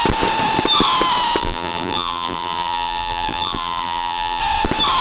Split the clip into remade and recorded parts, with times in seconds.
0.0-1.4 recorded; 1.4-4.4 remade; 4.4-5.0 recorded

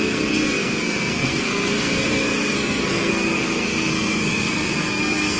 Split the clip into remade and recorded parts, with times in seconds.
0.0-5.4 remade

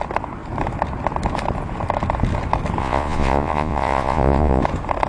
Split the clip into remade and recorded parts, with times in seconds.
0.0-2.8 recorded; 2.8-4.6 remade; 4.6-5.1 recorded

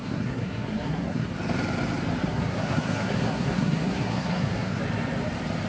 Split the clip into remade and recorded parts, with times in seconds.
0.0-1.3 remade; 1.3-2.2 recorded; 2.2-4.8 remade; 4.8-5.7 recorded

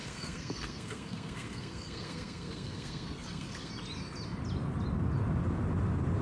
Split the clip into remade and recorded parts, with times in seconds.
0.0-3.7 remade; 3.7-6.2 recorded

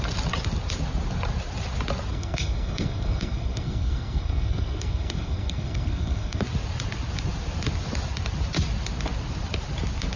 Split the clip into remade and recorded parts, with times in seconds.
0.0-2.1 recorded; 2.1-6.4 remade; 6.4-10.2 recorded